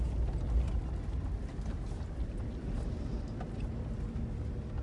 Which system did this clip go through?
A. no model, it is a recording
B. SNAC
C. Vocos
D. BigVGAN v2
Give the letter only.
A